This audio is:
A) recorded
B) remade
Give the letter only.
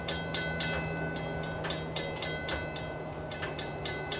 A